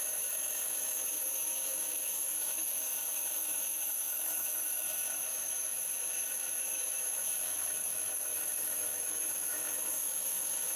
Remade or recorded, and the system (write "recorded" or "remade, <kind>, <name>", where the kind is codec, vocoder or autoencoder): remade, autoencoder, DAC-VAE